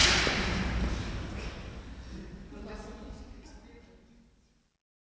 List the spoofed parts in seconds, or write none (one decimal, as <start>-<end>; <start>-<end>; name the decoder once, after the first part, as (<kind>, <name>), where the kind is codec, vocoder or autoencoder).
none